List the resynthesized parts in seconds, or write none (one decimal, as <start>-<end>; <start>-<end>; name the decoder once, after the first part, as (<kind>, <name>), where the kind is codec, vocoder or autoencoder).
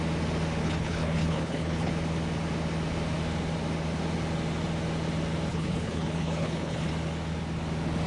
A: 0.6-1.9 (codec, HILCodec); 5.5-6.9